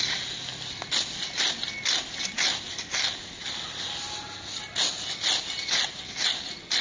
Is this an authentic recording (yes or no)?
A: yes